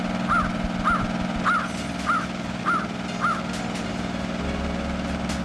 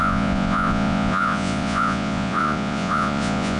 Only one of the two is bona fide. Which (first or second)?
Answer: first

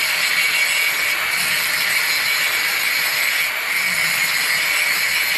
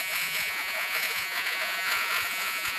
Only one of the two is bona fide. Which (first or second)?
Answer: first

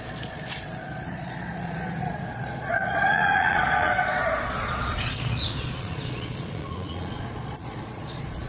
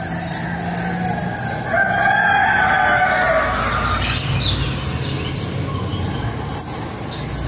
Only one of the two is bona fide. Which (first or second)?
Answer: second